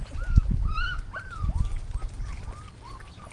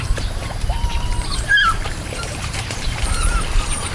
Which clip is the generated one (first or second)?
second